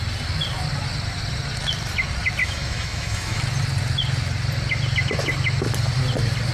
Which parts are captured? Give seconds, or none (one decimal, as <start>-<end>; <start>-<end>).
0.0-2.4; 3.4-6.5